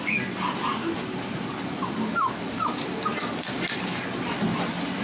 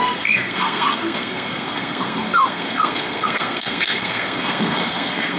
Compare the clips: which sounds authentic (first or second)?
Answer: first